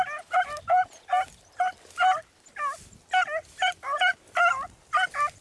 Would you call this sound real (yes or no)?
yes